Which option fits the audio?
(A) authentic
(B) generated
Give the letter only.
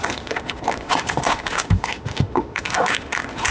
B